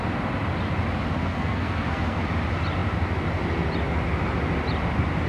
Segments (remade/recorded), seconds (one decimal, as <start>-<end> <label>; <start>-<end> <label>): 0.0-1.2 recorded; 1.2-2.2 remade; 2.2-5.3 recorded